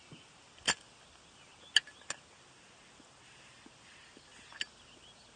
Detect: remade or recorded recorded